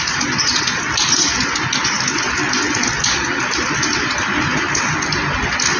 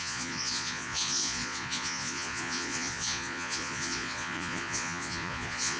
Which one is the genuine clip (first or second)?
first